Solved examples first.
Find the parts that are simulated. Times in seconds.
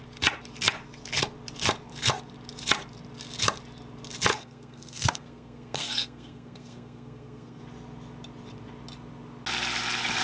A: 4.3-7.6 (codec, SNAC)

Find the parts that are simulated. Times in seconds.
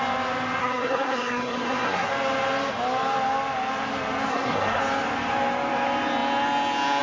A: 0.6-2.1 (codec, SNAC); 4.3-4.8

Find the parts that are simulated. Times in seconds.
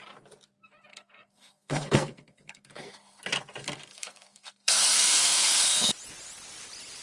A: 0.9-3.2 (codec, SNAC); 3.9-5.9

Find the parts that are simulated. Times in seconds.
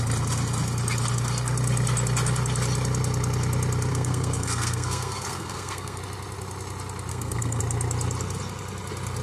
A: 3.9-6.0 (codec, SNAC); 7.1-7.6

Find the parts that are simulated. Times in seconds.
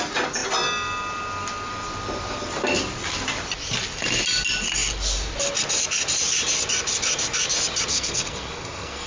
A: 7.9-9.1 (codec, SNAC)